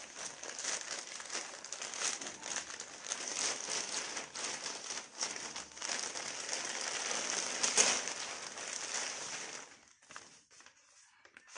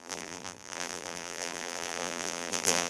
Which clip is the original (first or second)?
first